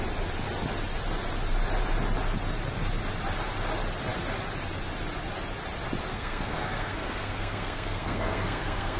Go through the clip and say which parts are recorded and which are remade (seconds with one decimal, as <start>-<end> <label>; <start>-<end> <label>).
0.0-6.1 recorded; 6.1-9.0 remade